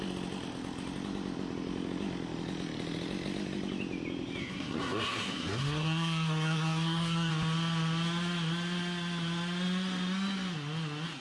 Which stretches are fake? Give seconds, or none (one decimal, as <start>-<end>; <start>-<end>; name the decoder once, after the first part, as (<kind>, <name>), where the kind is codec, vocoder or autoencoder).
4.4-7.3 (codec, SNAC)